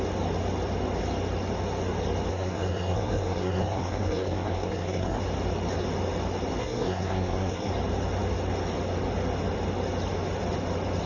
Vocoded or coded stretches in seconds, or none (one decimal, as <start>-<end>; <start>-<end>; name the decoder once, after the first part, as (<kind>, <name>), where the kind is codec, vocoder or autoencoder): 2.3-5.2 (codec, SNAC); 6.6-7.7